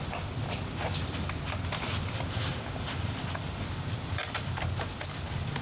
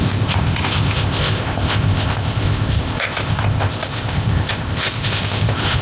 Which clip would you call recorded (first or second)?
first